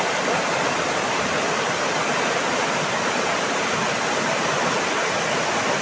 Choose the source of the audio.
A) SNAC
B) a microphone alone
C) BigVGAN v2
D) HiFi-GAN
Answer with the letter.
B